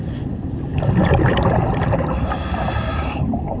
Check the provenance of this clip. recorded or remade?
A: recorded